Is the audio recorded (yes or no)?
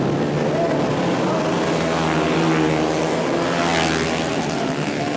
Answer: yes